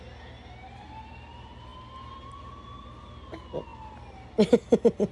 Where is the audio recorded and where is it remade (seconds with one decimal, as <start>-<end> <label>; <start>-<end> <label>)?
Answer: 0.0-5.1 recorded